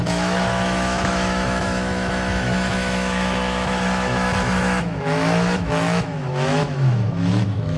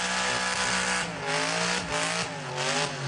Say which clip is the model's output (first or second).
first